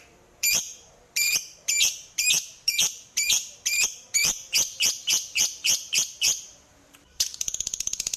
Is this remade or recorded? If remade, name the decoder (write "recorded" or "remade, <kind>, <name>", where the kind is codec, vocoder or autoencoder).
remade, vocoder, BigVGAN v2